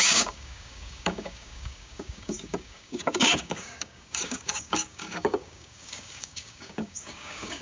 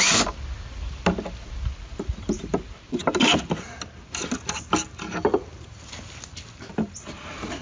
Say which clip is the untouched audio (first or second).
second